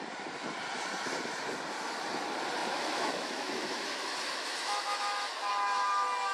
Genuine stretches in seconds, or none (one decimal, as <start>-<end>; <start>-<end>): 0.0-2.6; 5.5-6.3